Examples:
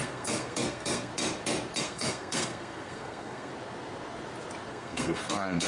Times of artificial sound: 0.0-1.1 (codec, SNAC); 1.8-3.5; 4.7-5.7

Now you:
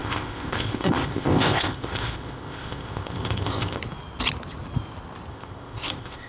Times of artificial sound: 0.0-3.8 (codec, ZipCodec); 5.3-6.3